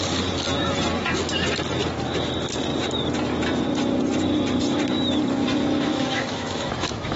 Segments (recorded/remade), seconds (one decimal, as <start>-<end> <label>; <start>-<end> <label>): 0.0-5.9 recorded; 5.9-7.2 remade